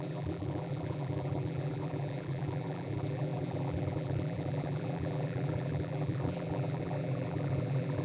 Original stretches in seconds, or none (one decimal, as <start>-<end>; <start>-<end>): none